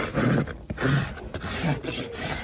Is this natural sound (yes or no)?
yes